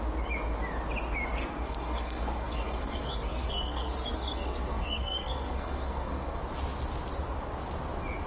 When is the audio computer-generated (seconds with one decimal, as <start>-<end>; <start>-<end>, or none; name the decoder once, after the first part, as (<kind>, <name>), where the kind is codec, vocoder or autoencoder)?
1.4-6.4 (codec, SNAC)